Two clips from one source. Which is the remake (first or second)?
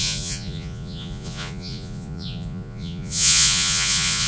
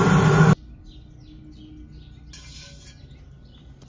first